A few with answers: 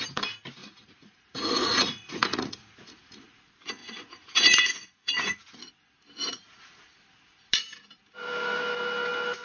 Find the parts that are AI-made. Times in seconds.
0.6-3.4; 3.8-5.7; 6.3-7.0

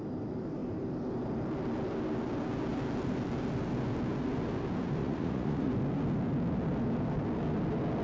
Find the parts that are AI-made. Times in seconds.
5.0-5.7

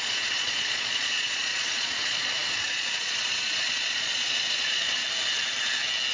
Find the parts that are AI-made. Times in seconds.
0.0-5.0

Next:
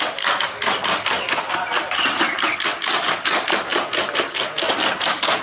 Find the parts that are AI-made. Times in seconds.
none

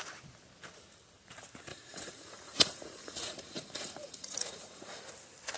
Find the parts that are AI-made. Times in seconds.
1.7-5.1

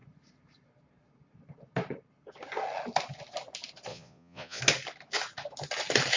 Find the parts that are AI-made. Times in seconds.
3.9-4.6

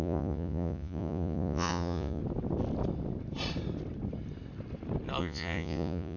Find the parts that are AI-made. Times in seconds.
0.0-2.2; 5.2-6.2